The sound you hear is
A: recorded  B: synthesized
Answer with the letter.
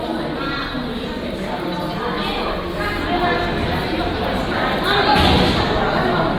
A